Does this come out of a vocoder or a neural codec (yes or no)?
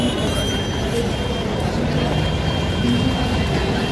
no